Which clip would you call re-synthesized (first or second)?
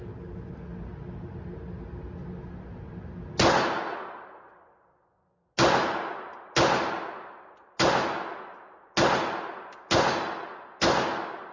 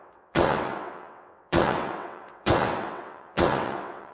second